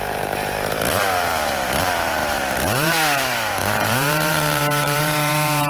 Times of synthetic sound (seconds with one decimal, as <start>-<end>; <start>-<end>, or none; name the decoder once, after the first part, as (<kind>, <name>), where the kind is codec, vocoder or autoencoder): 0.0-5.7 (vocoder, BigVGAN v2)